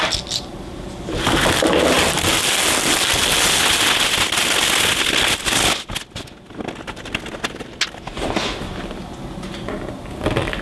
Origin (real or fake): real